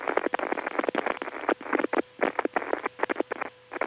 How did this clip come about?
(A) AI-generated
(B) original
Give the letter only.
B